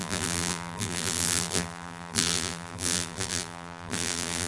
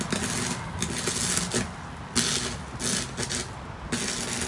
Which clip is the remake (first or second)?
first